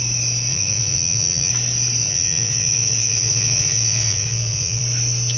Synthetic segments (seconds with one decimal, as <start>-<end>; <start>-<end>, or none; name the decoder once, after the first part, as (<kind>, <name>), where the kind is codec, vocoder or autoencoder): 0.5-1.5 (vocoder, Vocos); 2.0-4.8